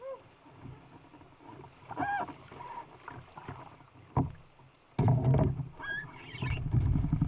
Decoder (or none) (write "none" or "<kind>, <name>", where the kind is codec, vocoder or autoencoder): none